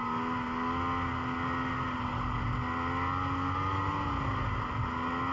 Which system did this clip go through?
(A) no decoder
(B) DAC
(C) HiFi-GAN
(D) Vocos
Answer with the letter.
A